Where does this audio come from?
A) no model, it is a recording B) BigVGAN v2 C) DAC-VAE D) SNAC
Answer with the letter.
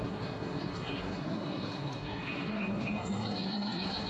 D